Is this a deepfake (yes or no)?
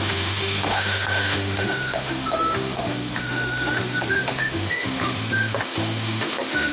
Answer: yes